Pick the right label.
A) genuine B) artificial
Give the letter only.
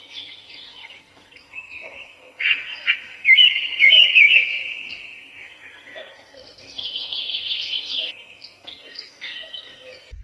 B